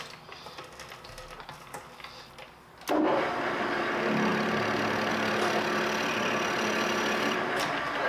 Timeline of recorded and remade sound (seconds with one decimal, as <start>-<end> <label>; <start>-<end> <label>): 0.0-8.1 recorded